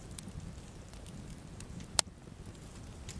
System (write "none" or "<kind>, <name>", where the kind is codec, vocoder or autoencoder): none